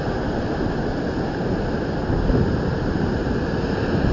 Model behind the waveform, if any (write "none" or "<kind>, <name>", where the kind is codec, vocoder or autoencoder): none